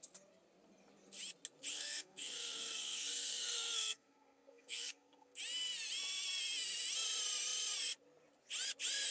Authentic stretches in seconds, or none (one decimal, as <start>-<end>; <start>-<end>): 0.0-1.7; 5.4-9.1